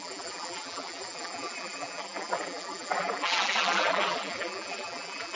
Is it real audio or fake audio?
fake